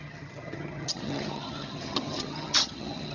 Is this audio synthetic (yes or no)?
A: yes